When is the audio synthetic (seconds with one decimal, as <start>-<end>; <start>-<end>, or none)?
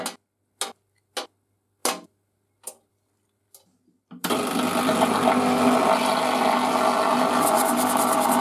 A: none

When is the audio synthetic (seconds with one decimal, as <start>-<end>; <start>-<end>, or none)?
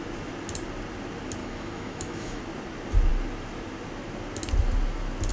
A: 1.4-2.4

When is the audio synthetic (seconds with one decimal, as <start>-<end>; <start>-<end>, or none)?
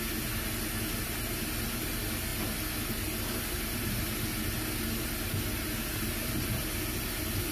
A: none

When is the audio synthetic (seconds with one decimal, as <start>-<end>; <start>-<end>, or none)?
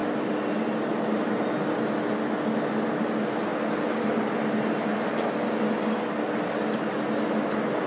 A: none